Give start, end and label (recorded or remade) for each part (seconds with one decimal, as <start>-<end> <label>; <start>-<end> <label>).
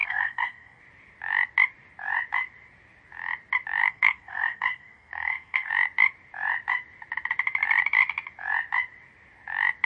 0.0-0.8 remade; 0.8-3.8 recorded; 3.8-5.7 remade; 5.7-9.9 recorded